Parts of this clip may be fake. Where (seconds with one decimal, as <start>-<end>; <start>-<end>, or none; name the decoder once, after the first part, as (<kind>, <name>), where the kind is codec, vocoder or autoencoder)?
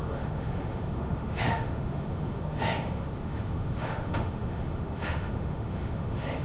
0.0-6.4 (autoencoder, DAC-VAE)